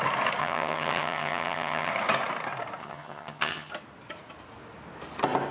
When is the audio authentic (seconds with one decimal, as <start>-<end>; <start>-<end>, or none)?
0.0-0.4; 1.9-2.8; 3.7-5.5

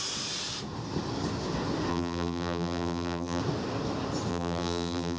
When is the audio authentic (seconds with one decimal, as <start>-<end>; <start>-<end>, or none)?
0.0-1.9; 3.4-4.3

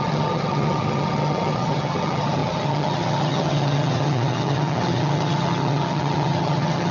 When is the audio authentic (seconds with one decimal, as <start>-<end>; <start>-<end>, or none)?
none

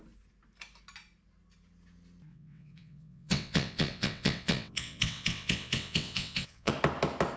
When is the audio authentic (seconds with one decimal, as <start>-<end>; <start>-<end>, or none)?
0.0-2.3; 6.7-7.4

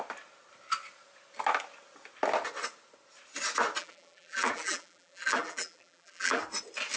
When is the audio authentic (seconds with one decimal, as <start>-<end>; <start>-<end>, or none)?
0.0-3.8; 6.4-7.0